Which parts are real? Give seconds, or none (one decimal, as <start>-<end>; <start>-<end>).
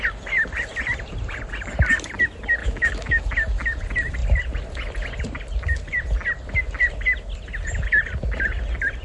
0.0-2.6; 3.2-9.0